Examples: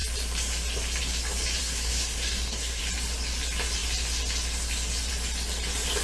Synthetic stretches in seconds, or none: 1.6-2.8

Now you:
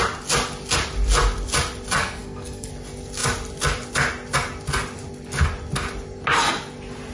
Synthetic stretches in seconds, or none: 2.0-2.7